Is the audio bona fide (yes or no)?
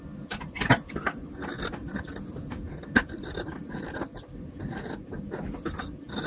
yes